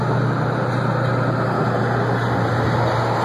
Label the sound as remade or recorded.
recorded